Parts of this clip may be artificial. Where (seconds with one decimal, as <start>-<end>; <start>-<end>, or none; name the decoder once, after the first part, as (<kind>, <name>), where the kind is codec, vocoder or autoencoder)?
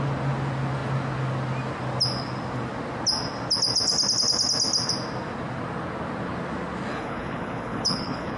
6.9-8.4 (codec, HILCodec)